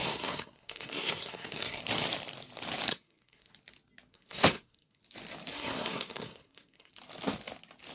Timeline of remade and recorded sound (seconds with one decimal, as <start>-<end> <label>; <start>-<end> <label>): 0.0-1.8 remade; 1.8-2.9 recorded; 2.9-3.5 remade; 3.5-4.1 recorded; 4.1-5.0 remade; 5.0-5.5 recorded; 5.5-6.9 remade; 6.9-7.9 recorded